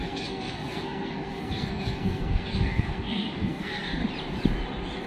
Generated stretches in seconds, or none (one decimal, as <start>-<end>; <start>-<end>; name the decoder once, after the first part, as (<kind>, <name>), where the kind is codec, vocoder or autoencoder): 0.0-4.0 (codec, SNAC)